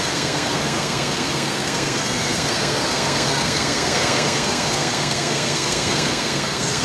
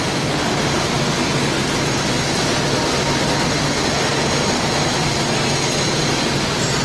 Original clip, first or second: second